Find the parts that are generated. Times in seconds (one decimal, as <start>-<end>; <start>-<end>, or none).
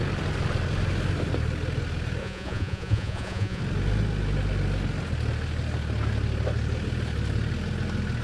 2.2-3.6